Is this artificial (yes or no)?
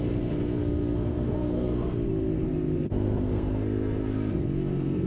yes